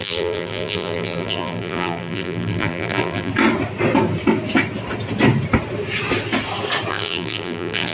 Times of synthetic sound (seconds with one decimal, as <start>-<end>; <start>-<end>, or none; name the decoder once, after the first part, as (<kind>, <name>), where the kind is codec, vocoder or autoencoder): 0.0-3.3 (vocoder, BigVGAN v2); 6.9-7.9